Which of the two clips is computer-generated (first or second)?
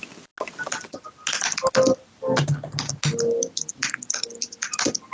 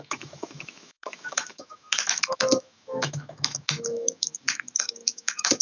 second